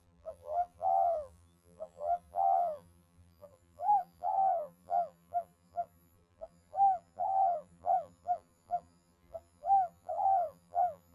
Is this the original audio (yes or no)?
no